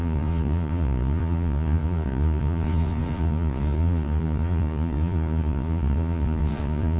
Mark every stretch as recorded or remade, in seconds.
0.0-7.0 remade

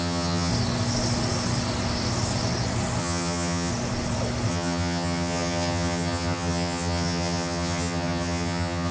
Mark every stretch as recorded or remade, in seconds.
0.0-0.5 remade; 0.5-3.0 recorded; 3.0-3.7 remade; 3.7-4.5 recorded; 4.5-8.9 remade

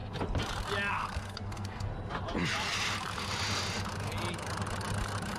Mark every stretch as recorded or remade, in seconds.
0.0-0.9 recorded; 0.9-1.9 remade; 1.9-5.4 recorded

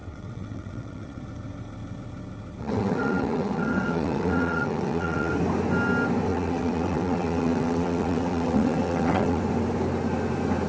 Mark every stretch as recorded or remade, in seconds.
0.0-1.2 remade; 1.2-2.6 recorded; 2.6-5.3 remade; 5.3-6.3 recorded; 6.3-9.4 remade; 9.4-10.7 recorded

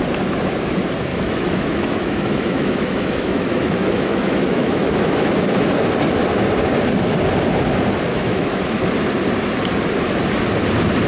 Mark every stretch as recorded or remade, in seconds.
0.0-1.1 recorded; 1.1-5.7 remade; 5.7-8.1 recorded; 8.1-8.8 remade; 8.8-11.1 recorded

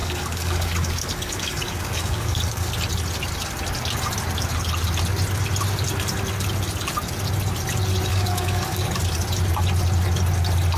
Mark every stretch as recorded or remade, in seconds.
0.0-2.7 remade; 2.7-8.1 recorded; 8.1-9.0 remade; 9.0-10.8 recorded

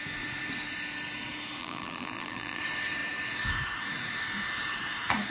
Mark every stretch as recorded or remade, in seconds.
0.0-1.6 recorded; 1.6-2.6 remade; 2.6-5.3 recorded

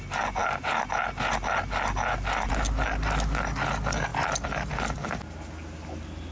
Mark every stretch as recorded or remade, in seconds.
0.0-4.1 recorded; 4.1-5.2 remade; 5.2-6.3 recorded